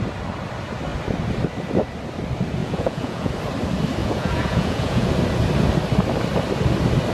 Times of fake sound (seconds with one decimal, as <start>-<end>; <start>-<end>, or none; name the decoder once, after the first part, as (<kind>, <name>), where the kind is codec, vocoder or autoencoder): 2.6-3.3 (vocoder, Vocos); 4.0-5.1